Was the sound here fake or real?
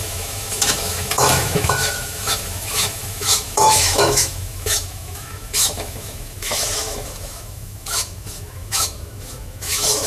fake